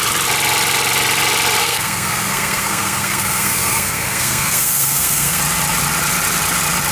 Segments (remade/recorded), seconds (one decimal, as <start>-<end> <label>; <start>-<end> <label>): 0.0-1.6 recorded; 1.6-5.4 remade; 5.4-6.9 recorded